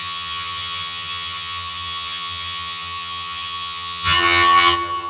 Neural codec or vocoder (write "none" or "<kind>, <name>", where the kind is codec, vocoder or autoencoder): vocoder, HiFi-GAN